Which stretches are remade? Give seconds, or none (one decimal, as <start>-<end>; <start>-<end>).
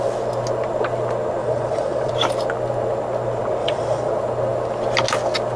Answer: 1.4-2.1; 3.6-4.1